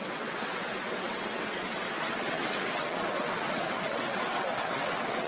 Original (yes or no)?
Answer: no